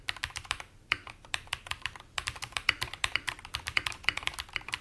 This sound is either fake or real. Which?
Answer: fake